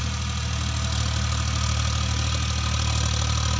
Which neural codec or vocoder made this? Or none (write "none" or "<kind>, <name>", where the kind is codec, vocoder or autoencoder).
none